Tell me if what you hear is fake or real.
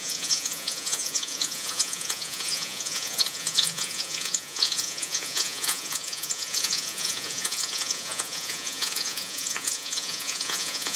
fake